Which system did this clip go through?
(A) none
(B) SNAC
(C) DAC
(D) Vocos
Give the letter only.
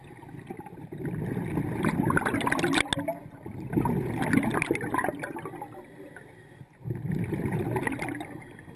A